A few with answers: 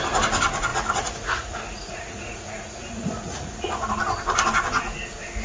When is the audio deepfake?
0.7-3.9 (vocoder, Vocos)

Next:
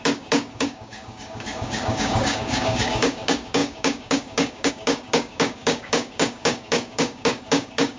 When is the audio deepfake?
0.0-8.0 (codec, DAC)

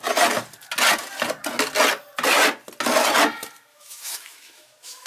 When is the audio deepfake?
3.7-5.1 (autoencoder, DAC-VAE)

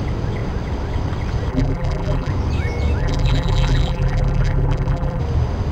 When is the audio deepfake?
1.5-2.3 (vocoder, BigVGAN v2); 3.0-5.2

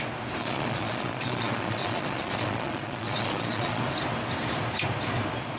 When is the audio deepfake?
0.4-3.8 (vocoder, Vocos)

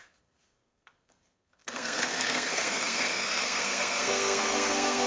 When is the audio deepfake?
0.0-5.1 (codec, SNAC)